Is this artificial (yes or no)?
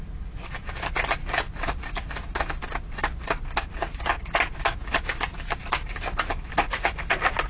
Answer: no